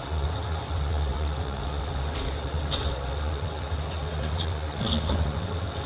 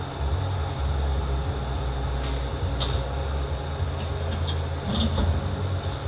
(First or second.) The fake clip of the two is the first